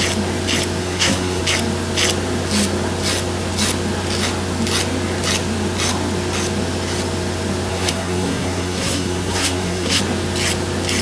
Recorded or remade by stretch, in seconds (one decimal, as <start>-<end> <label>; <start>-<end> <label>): 0.0-0.8 recorded; 0.8-1.4 remade; 1.4-7.7 recorded; 7.7-10.0 remade; 10.0-11.0 recorded